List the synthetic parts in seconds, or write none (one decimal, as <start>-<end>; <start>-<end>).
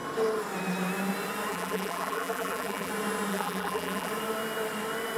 1.5-2.9; 3.3-4.1